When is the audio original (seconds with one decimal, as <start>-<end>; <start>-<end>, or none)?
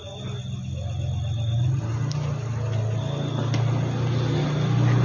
0.0-5.0